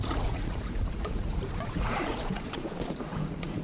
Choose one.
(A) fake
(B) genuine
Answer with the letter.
A